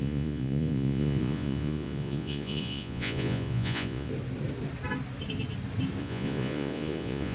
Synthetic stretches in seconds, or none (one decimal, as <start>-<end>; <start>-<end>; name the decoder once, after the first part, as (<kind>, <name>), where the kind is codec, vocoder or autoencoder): 0.0-4.1 (vocoder, Vocos); 6.0-7.3